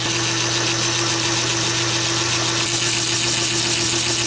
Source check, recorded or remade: recorded